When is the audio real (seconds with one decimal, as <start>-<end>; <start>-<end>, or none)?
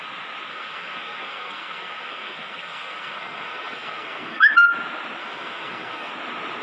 0.0-0.5; 4.5-5.2; 6.1-6.6